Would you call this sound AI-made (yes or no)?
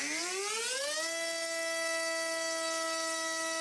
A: no